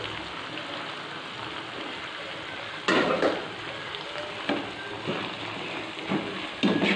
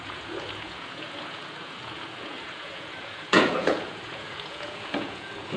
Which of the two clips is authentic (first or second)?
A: first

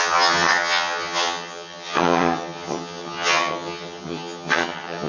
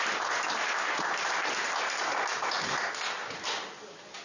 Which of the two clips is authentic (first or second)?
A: second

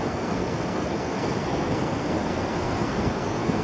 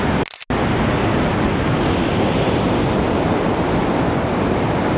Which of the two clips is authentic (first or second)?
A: second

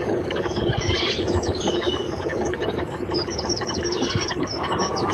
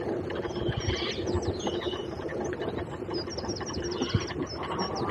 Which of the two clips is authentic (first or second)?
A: second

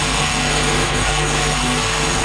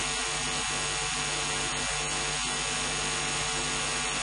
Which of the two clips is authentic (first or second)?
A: second